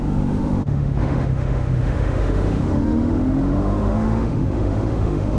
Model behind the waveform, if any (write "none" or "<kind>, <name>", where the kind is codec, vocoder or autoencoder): autoencoder, DAC-VAE